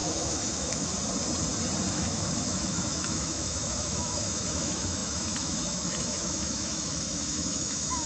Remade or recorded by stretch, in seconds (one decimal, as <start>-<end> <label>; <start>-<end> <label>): 0.0-0.9 remade; 0.9-1.9 recorded; 1.9-8.1 remade